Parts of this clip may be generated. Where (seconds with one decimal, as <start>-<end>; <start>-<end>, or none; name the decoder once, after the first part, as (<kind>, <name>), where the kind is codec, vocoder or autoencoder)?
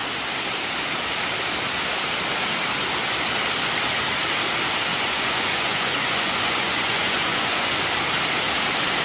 4.9-7.8 (vocoder, Vocos)